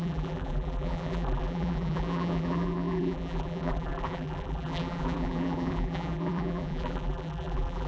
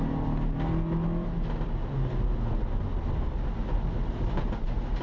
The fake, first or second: first